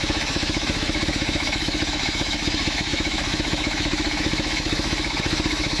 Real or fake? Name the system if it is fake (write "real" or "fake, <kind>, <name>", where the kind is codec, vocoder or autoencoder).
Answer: fake, autoencoder, DAC-VAE